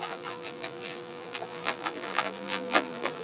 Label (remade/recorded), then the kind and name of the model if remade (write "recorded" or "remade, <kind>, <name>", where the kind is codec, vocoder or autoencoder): remade, vocoder, BigVGAN v2